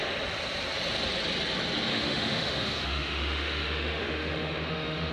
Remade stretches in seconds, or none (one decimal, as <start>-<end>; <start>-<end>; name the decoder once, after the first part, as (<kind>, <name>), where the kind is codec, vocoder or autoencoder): 1.9-5.1 (autoencoder, DAC-VAE)